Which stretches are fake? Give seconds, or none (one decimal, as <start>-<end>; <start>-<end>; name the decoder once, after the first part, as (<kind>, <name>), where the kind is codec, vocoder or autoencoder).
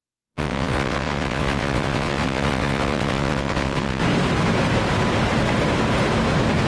0.0-4.0 (vocoder, WaveNeXt)